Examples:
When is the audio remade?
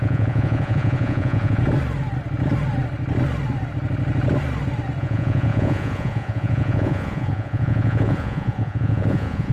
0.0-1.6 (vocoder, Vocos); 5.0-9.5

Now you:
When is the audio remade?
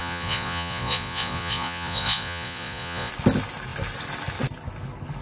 0.0-3.1 (vocoder, Vocos)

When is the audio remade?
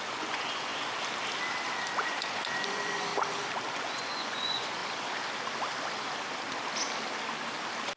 0.0-0.7 (vocoder, Vocos); 2.0-3.1; 3.7-4.8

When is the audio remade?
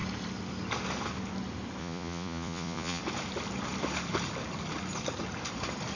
1.8-3.0 (vocoder, Vocos)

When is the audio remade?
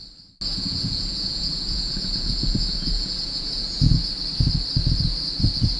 0.5-4.0 (vocoder, Vocos)